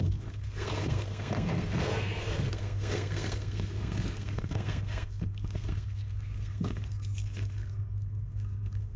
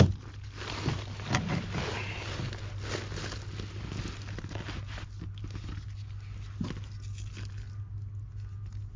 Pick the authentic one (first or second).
second